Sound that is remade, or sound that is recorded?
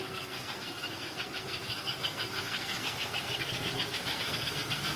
remade